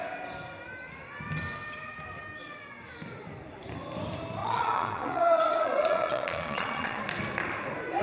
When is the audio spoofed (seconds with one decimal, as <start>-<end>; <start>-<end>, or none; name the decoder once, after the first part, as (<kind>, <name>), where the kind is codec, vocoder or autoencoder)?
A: 4.4-7.0 (vocoder, Vocos)